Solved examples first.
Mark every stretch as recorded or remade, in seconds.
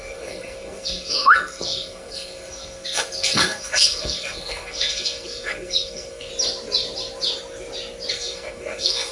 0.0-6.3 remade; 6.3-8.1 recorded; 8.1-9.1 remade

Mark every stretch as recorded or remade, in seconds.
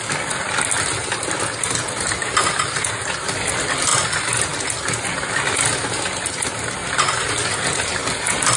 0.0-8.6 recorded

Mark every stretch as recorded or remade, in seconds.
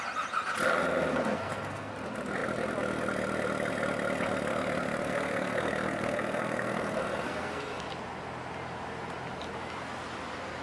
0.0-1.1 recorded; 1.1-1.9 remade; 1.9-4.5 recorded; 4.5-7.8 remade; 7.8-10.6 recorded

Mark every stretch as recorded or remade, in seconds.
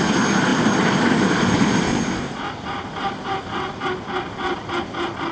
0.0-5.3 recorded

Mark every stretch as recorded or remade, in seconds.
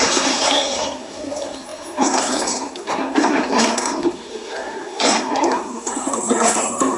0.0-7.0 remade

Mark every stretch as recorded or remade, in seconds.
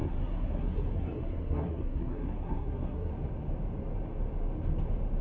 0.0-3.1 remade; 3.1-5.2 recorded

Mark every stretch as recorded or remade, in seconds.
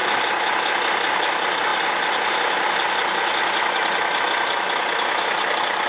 0.0-5.9 recorded